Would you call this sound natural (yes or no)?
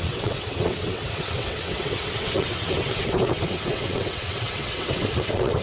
no